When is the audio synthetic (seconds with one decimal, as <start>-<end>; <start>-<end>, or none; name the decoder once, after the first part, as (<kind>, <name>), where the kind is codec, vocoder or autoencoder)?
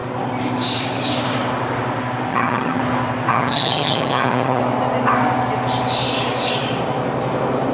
2.3-2.8 (vocoder, HiFi-GAN); 3.3-4.6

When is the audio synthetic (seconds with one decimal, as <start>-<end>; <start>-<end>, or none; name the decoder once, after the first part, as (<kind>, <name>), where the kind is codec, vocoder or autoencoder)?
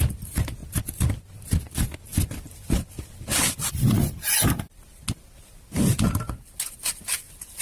0.6-1.2 (vocoder, BigVGAN v2); 2.1-5.0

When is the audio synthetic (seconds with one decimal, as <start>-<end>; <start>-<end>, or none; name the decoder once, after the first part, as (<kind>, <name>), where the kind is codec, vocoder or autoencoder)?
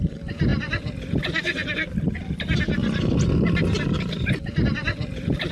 none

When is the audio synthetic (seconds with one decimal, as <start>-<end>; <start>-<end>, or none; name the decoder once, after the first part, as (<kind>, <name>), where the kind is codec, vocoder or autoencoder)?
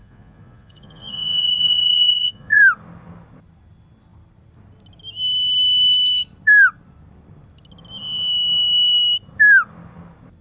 0.0-2.6 (vocoder, Vocos)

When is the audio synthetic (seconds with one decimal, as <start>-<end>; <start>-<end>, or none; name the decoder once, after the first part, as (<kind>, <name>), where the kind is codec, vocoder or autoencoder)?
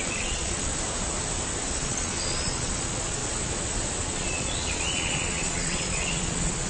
0.0-0.7 (vocoder, Vocos); 1.7-3.2; 4.0-6.7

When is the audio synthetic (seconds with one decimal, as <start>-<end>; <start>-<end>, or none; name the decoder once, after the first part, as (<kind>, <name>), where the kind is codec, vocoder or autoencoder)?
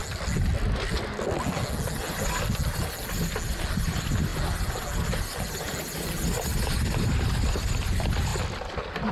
8.3-9.1 (vocoder, BigVGAN v2)